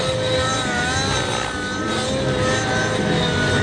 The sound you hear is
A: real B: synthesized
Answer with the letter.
A